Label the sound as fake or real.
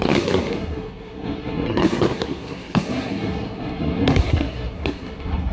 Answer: fake